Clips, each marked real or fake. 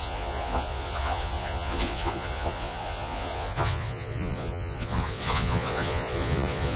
fake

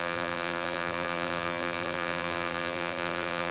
fake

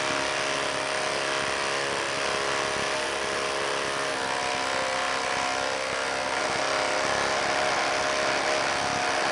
real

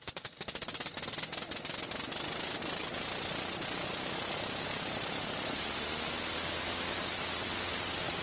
real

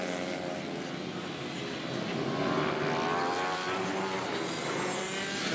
real